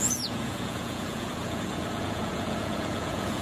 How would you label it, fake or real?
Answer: fake